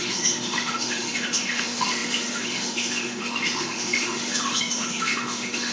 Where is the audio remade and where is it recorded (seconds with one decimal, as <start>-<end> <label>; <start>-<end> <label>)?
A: 0.0-5.7 remade